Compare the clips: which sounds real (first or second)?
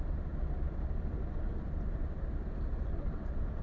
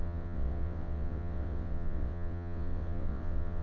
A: first